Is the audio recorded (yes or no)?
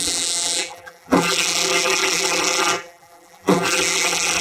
no